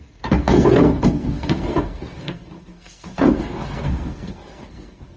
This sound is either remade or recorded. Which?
remade